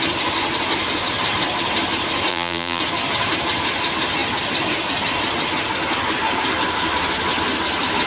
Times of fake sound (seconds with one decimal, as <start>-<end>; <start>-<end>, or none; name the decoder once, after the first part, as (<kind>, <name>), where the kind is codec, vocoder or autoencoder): 2.3-2.8 (vocoder, BigVGAN v2)